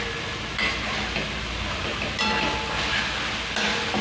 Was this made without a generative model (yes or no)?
yes